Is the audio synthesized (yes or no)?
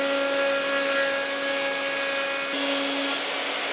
no